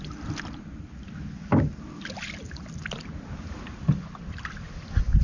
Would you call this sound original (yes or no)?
yes